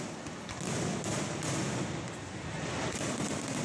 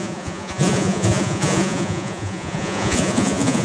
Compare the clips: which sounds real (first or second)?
first